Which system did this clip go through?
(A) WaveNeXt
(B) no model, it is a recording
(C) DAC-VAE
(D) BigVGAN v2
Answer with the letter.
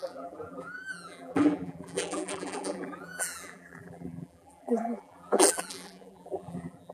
D